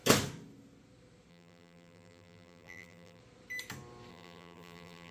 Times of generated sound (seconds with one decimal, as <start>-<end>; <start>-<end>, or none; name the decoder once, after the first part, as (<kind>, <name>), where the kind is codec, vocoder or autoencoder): 1.3-3.2 (vocoder, BigVGAN v2); 4.1-5.1